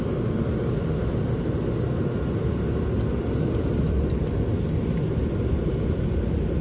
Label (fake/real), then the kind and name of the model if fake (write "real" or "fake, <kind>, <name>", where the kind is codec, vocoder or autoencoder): real